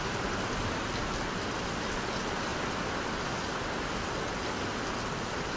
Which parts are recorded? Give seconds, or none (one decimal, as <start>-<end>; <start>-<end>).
0.0-5.6